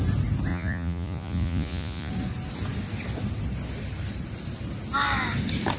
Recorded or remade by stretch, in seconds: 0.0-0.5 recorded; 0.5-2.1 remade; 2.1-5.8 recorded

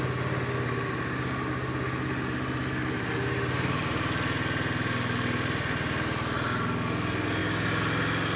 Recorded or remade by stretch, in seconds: 0.0-8.4 recorded